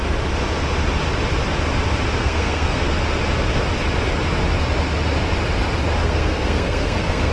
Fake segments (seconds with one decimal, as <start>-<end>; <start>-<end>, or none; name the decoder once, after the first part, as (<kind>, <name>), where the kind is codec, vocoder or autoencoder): 2.2-2.8 (codec, SNAC); 6.0-7.3